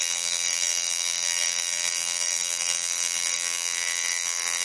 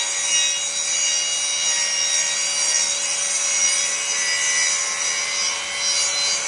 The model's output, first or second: first